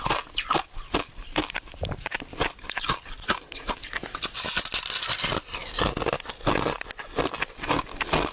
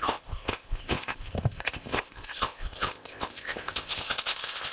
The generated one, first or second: second